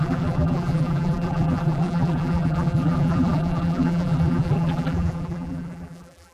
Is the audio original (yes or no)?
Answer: no